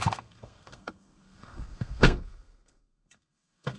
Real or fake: fake